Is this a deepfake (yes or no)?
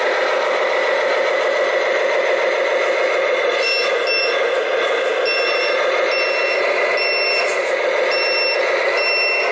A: no